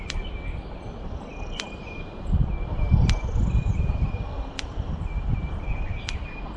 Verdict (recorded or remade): recorded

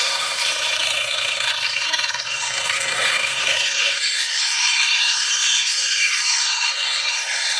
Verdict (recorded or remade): remade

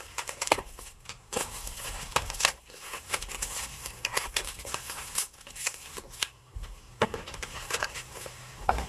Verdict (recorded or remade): remade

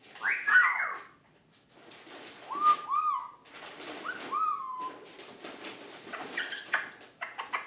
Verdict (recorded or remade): recorded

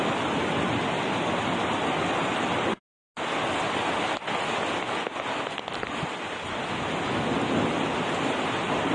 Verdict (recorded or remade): recorded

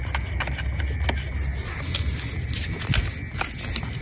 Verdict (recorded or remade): recorded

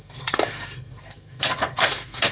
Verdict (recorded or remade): remade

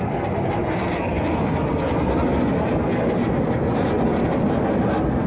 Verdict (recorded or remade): recorded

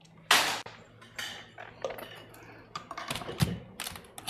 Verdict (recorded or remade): recorded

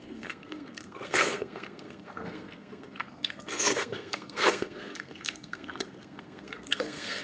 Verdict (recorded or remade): remade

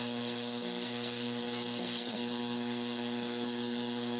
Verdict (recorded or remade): remade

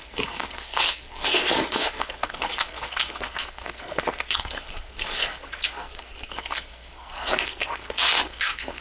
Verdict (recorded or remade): remade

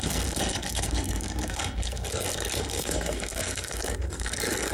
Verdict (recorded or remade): remade